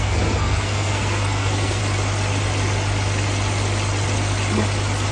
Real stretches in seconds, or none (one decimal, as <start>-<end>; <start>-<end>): 1.8-5.1